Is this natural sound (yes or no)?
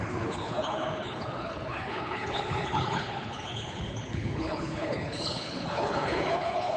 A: no